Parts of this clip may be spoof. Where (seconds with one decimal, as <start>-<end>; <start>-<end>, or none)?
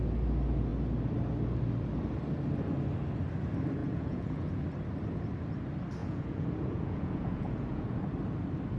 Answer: 3.8-4.6; 6.0-8.0